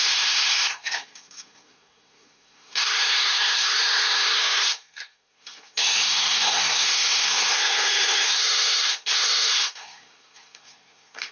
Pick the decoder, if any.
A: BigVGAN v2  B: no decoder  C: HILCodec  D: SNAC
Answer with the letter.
D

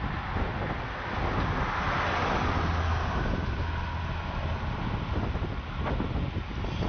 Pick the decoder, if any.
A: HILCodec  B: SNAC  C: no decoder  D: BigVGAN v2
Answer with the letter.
C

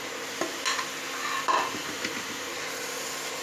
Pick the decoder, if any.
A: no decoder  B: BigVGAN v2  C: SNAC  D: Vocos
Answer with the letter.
A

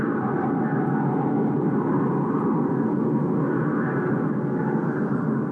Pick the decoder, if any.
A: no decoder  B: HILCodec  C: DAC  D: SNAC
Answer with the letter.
A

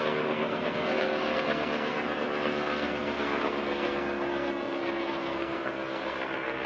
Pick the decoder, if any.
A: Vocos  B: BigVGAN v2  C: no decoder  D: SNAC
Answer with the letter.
D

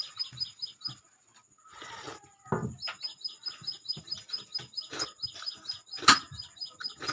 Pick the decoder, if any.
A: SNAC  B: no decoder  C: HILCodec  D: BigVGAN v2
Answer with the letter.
B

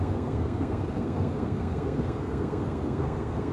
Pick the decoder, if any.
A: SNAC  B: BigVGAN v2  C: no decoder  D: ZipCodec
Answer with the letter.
A